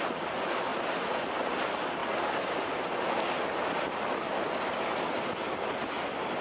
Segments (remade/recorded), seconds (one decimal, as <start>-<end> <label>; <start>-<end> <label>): 0.0-6.4 recorded